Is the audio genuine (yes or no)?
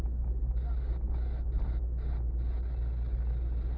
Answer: yes